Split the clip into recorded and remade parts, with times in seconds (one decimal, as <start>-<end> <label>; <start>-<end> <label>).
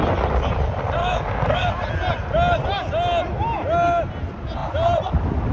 0.0-1.0 recorded; 1.0-1.7 remade; 1.7-5.5 recorded